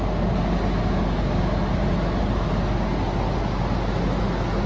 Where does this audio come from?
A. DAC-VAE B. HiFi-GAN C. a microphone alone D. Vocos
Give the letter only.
C